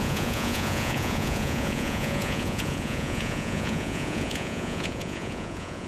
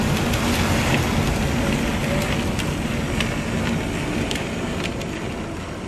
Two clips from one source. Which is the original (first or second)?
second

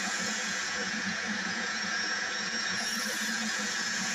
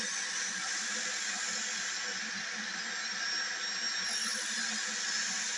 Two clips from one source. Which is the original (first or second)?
second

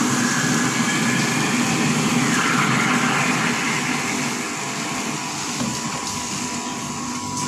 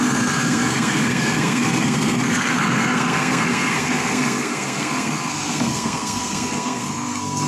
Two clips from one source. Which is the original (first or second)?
first